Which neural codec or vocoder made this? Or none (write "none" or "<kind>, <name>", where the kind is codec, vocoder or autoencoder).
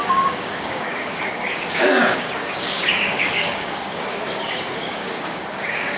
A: codec, DAC